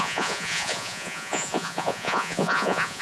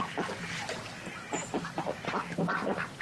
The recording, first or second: second